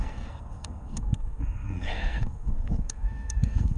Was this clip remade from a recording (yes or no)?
yes